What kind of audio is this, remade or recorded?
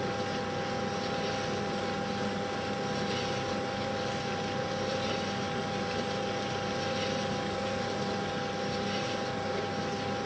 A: recorded